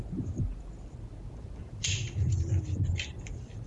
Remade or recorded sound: recorded